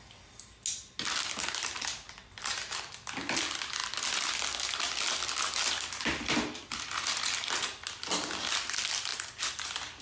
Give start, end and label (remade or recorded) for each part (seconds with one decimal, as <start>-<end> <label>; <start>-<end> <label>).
0.0-10.0 recorded